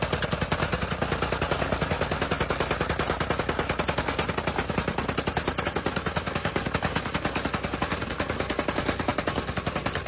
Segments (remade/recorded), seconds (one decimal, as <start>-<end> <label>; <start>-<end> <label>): 0.0-10.1 recorded